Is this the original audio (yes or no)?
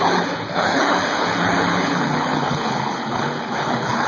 no